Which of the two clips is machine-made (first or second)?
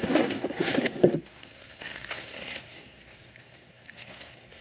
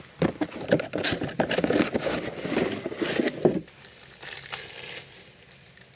first